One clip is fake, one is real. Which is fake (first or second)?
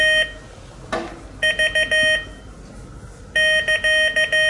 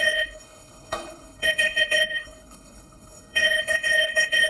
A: second